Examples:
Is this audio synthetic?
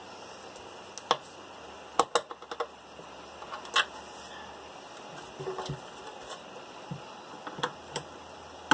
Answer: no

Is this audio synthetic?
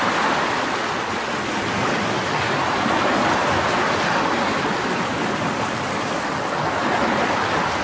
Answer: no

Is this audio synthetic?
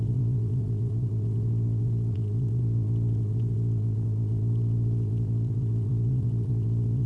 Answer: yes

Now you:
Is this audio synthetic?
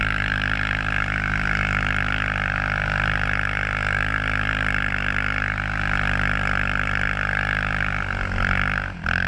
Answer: no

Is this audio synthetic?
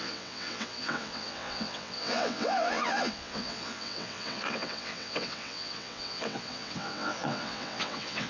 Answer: yes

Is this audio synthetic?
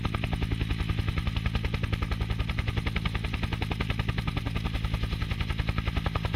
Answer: no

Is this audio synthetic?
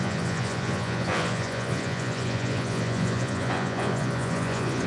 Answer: yes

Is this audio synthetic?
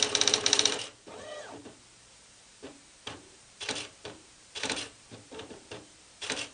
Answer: yes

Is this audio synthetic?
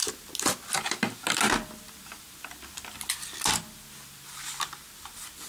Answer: no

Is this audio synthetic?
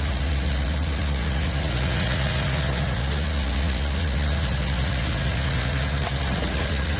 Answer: yes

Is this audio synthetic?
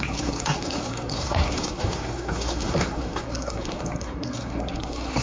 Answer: yes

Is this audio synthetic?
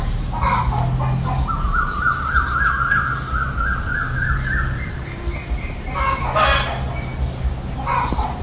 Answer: no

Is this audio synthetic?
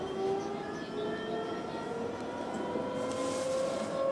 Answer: no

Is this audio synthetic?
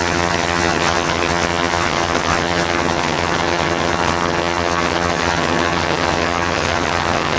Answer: yes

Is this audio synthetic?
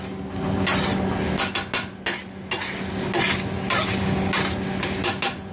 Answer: no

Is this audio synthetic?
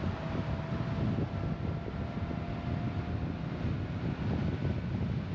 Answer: no